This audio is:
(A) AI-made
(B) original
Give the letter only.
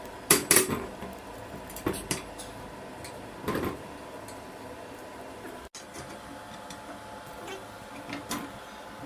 B